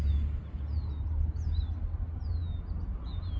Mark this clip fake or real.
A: real